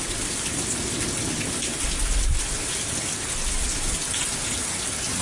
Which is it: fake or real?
real